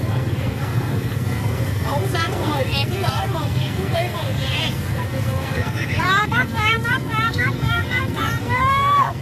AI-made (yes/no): yes